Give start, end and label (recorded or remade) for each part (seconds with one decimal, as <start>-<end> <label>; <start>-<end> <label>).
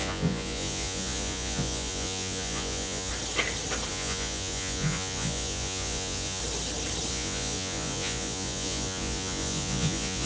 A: 0.0-3.1 remade; 3.1-3.9 recorded; 3.9-6.4 remade; 6.4-7.1 recorded; 7.1-10.3 remade